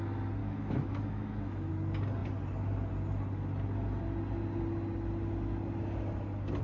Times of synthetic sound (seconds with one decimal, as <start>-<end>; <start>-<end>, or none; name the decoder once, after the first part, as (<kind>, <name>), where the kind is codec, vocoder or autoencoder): 0.4-1.7 (autoencoder, DAC-VAE)